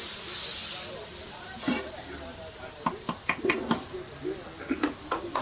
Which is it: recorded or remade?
recorded